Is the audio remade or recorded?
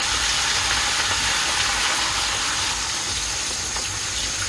recorded